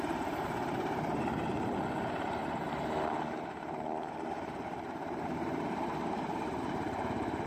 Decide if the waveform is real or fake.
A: fake